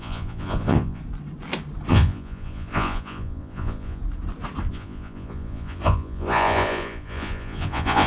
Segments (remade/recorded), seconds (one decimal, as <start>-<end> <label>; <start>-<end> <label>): 0.0-1.0 remade; 1.0-1.9 recorded; 1.9-4.0 remade; 4.0-4.7 recorded; 4.7-8.1 remade